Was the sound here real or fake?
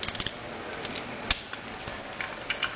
real